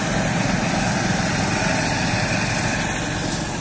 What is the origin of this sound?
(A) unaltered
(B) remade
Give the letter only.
A